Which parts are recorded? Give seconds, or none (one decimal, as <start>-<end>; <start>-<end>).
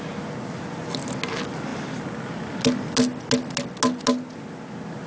0.0-5.1